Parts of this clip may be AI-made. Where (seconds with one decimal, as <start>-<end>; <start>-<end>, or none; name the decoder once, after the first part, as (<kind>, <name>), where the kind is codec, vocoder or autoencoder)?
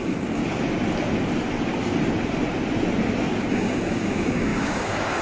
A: 0.0-0.4 (codec, DAC); 3.5-5.2